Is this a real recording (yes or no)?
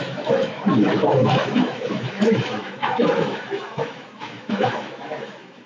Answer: no